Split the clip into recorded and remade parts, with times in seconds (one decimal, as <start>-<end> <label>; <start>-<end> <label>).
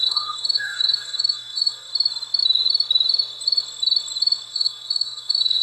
0.0-1.9 remade; 1.9-4.5 recorded; 4.5-5.6 remade